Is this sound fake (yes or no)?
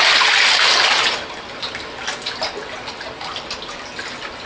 no